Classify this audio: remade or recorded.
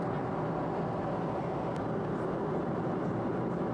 recorded